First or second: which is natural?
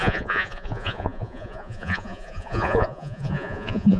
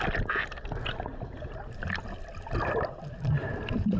second